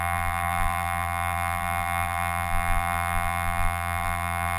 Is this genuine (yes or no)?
no